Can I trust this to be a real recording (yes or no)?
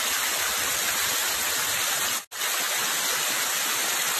yes